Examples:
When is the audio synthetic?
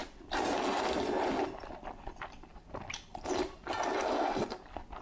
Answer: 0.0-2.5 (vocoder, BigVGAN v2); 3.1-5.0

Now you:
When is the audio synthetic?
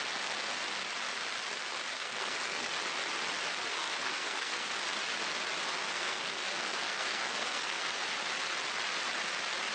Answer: 1.9-2.7 (codec, SNAC); 3.7-4.7; 5.8-8.0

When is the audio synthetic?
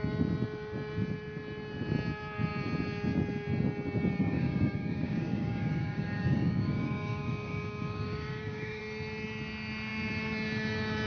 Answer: 4.2-8.8 (codec, DAC)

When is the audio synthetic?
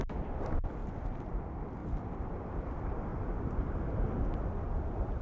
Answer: 0.0-3.1 (vocoder, BigVGAN v2); 4.1-5.2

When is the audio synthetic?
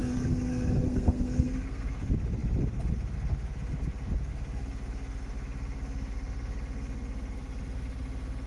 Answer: 0.0-1.9 (codec, SNAC)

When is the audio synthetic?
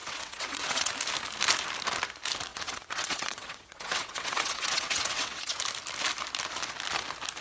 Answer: 0.0-0.9 (vocoder, WaveNeXt); 2.5-5.6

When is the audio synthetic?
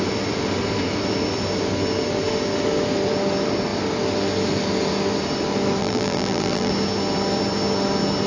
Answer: 5.8-6.7 (vocoder, BigVGAN v2)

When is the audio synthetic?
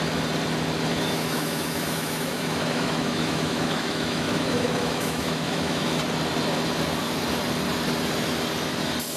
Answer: 0.9-6.0 (autoencoder, DAC-VAE)